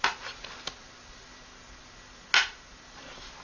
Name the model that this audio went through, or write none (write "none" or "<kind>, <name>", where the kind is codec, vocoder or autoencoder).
none